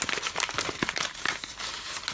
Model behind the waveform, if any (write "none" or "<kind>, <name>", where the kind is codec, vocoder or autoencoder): none